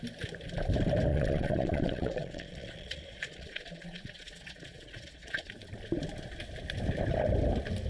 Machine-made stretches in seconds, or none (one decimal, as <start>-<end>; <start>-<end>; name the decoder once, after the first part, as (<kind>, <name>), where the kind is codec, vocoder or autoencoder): 1.1-5.5 (vocoder, Vocos)